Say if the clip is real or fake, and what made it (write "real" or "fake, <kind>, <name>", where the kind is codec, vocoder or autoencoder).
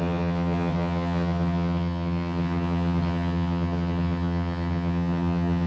fake, vocoder, HiFi-GAN